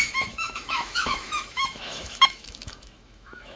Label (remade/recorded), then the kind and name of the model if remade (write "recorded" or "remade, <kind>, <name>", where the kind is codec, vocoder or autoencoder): remade, autoencoder, DAC-VAE